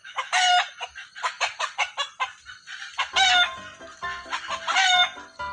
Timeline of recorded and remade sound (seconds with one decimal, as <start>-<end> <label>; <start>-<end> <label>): 0.0-5.5 recorded

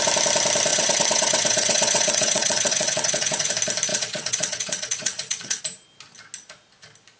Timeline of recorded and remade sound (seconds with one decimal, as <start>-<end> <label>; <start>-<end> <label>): 0.0-0.7 recorded; 0.7-3.5 remade; 3.5-3.9 recorded; 3.9-5.6 remade; 5.6-7.2 recorded

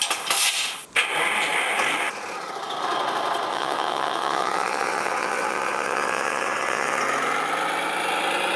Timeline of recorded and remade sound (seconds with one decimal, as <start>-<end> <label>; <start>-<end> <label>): 0.0-3.5 recorded; 3.5-7.0 remade; 7.0-8.6 recorded

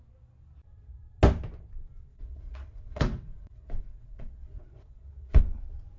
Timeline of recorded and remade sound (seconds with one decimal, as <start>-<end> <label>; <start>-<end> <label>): 0.0-2.1 recorded; 2.1-5.4 remade; 5.4-6.0 recorded

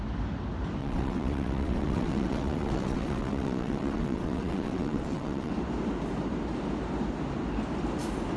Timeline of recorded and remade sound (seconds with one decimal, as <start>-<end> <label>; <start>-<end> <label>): 0.0-0.8 recorded; 0.8-5.5 remade; 5.5-8.4 recorded

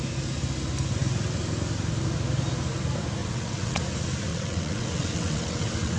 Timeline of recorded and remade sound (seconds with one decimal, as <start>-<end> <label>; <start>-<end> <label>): 0.0-3.2 recorded; 3.2-3.8 remade; 3.8-4.3 recorded; 4.3-6.0 remade

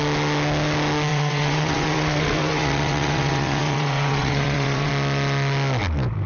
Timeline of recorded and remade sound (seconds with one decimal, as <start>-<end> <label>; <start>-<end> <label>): 0.0-1.1 recorded; 1.1-4.9 remade; 4.9-6.3 recorded